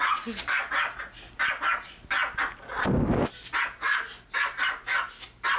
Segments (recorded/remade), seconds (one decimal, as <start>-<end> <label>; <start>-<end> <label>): 0.0-2.2 recorded; 2.2-3.3 remade; 3.3-5.6 recorded